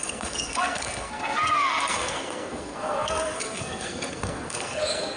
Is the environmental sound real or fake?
fake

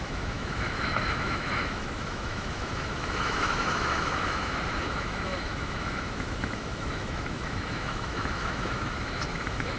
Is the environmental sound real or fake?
fake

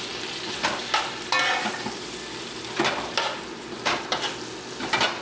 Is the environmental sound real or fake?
real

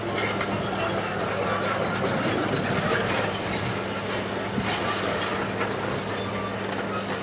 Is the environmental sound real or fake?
real